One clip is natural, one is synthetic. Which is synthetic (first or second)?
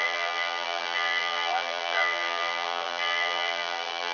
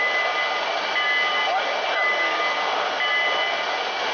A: first